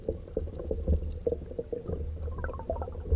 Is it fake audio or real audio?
real